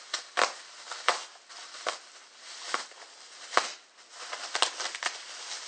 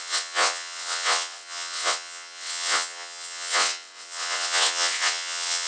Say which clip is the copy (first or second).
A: second